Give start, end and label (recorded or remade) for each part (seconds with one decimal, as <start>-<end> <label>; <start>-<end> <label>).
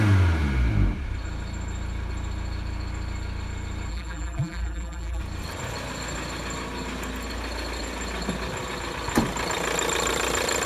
0.0-3.9 recorded; 3.9-5.2 remade; 5.2-10.7 recorded